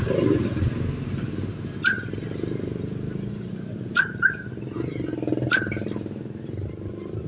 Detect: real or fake real